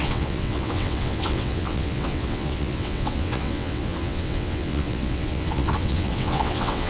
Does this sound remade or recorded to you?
remade